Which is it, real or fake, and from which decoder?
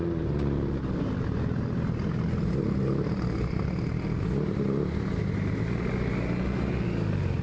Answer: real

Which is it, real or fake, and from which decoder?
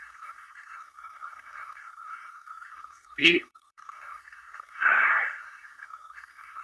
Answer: fake, codec, SNAC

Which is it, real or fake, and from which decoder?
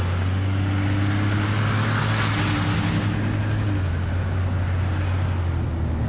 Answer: real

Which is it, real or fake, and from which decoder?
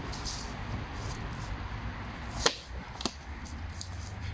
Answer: real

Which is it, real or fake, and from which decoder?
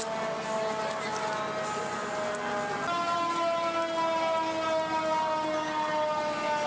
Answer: real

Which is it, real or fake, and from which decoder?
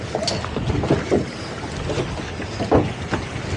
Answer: real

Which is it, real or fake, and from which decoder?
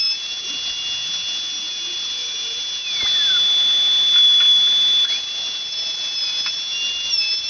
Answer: real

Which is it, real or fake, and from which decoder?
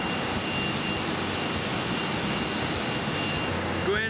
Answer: real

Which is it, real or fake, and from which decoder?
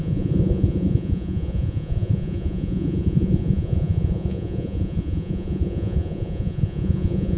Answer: fake, vocoder, Vocos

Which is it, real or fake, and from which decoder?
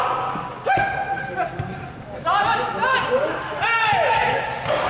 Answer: real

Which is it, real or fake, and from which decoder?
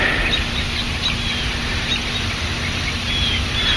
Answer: real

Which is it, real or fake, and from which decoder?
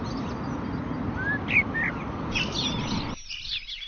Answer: real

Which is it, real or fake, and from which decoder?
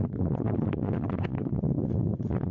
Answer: fake, vocoder, Vocos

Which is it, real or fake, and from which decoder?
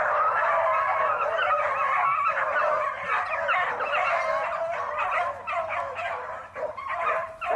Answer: real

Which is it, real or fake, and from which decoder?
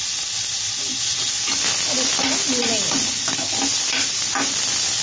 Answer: real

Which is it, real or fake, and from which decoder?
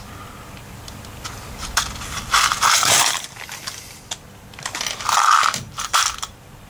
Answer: fake, vocoder, BigVGAN v2